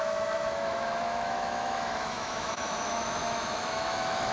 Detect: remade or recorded remade